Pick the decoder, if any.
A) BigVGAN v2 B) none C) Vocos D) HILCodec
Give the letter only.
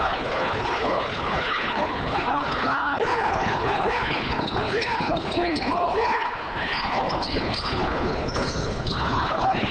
D